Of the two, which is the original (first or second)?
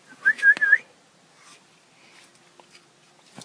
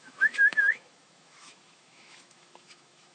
first